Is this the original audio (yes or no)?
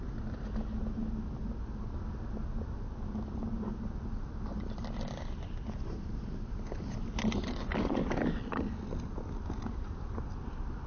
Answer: yes